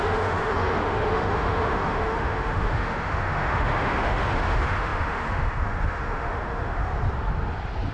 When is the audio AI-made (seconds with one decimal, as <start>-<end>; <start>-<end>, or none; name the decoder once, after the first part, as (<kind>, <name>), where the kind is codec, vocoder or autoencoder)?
0.0-6.9 (autoencoder, DAC-VAE)